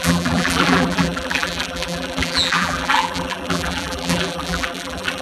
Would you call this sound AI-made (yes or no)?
yes